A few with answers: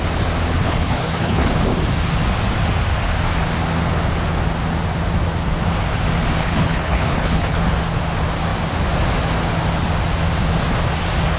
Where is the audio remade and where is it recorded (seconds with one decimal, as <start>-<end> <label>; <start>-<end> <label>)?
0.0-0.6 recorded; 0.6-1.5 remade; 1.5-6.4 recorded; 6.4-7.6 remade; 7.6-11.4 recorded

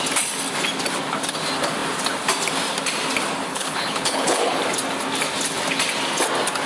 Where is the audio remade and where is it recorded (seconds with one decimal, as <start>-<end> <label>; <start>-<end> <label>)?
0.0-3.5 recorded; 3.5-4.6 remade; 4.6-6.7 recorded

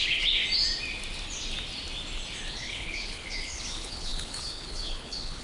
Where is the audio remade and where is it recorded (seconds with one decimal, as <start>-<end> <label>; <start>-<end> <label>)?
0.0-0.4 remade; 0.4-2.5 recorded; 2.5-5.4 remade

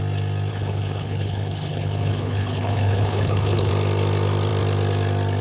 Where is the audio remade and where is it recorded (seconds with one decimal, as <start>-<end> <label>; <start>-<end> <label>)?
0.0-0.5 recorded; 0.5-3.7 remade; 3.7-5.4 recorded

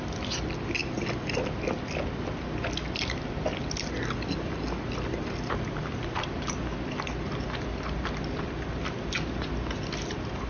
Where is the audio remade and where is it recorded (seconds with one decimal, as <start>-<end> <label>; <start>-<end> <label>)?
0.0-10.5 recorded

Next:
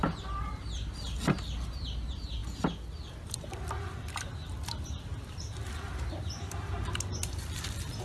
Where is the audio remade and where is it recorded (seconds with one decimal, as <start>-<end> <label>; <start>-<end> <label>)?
0.0-8.0 recorded

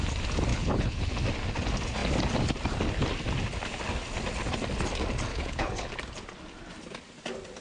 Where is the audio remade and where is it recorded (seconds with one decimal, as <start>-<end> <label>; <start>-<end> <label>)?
0.0-0.5 recorded; 0.5-1.0 remade; 1.0-5.3 recorded; 5.3-5.9 remade; 5.9-7.6 recorded